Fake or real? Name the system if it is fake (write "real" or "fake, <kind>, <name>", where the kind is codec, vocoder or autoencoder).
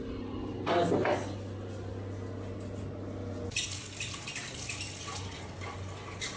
real